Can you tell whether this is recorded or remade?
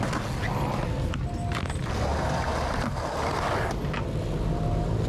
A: recorded